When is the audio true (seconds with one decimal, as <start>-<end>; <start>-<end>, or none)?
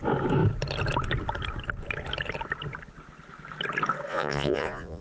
0.0-4.1